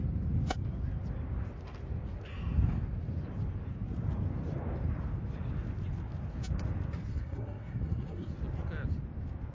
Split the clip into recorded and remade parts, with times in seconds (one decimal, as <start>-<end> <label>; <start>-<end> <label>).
0.0-7.1 recorded; 7.1-8.3 remade; 8.3-9.5 recorded